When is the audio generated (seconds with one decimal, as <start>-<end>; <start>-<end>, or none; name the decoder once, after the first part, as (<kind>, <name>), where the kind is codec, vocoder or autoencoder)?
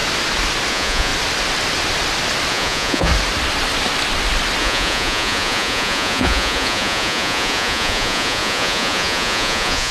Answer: 0.7-1.1 (vocoder, Vocos); 2.5-3.1; 4.6-9.9